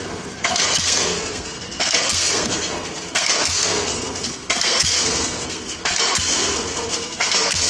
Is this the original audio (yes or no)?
no